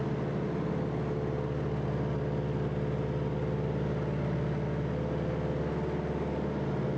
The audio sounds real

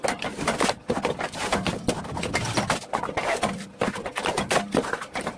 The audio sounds real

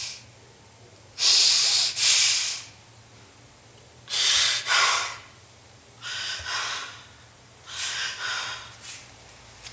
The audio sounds real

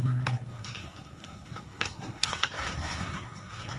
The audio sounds fake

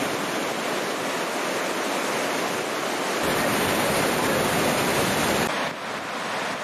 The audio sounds real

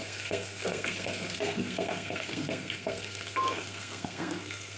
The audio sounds fake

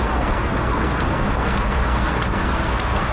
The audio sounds fake